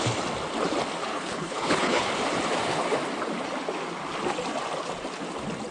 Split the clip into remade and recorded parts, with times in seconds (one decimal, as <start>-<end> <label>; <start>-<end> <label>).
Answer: 0.0-1.1 recorded; 1.1-2.1 remade; 2.1-5.7 recorded